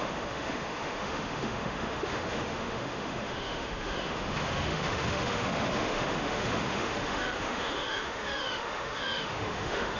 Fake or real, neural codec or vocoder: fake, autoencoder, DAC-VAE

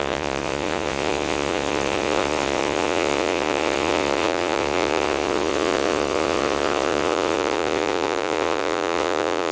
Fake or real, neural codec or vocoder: fake, vocoder, Vocos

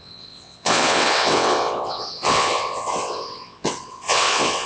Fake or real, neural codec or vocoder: fake, vocoder, WaveNeXt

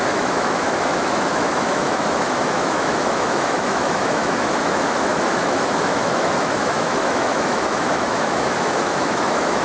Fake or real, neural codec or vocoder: fake, autoencoder, DAC-VAE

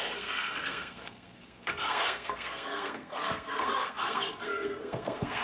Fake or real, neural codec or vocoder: fake, codec, SNAC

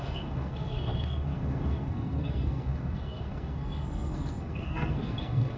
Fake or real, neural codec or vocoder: fake, codec, SNAC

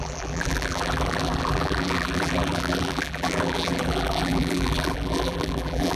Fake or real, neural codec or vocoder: fake, vocoder, BigVGAN v2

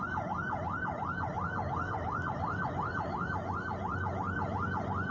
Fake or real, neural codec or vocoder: real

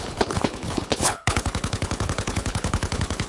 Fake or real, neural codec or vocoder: fake, codec, HILCodec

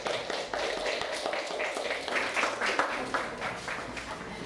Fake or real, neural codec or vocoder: real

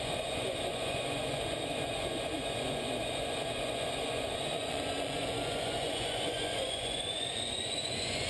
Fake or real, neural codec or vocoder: fake, vocoder, Vocos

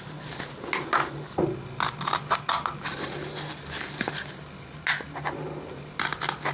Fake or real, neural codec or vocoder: real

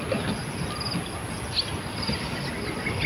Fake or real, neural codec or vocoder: real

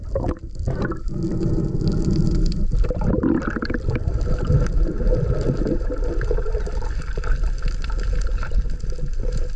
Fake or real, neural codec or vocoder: fake, vocoder, BigVGAN v2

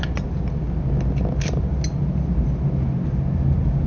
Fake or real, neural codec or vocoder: real